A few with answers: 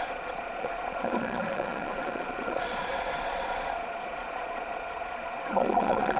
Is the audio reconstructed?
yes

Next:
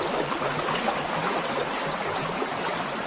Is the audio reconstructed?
no